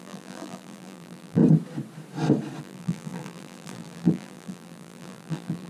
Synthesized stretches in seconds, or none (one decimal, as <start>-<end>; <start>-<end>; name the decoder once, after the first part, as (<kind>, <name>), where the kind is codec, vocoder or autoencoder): 0.0-1.4 (vocoder, BigVGAN v2); 2.6-5.7